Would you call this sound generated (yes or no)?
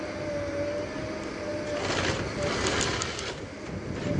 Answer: no